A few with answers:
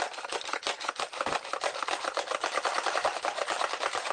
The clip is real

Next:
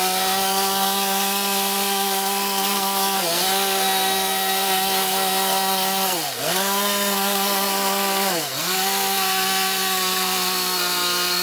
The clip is fake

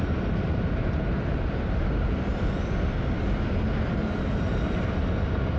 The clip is real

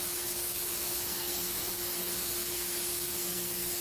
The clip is fake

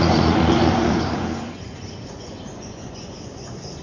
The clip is fake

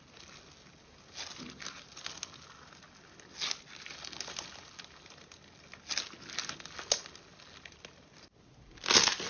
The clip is real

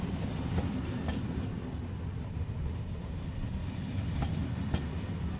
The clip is real